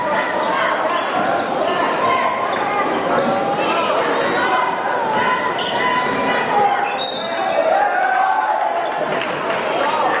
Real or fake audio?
real